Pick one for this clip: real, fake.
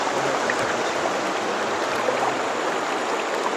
real